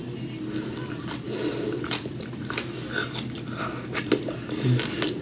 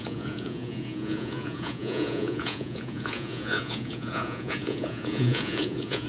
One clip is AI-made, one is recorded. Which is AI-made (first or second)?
second